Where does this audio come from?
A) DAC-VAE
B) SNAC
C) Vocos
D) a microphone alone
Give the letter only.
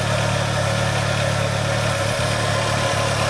D